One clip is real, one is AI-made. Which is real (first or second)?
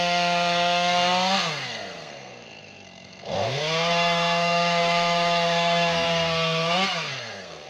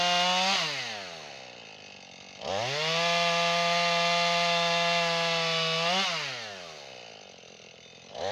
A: second